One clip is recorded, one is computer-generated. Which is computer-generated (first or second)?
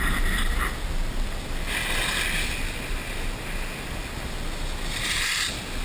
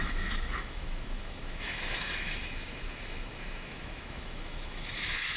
second